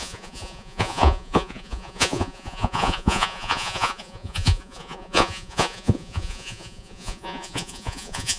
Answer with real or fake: fake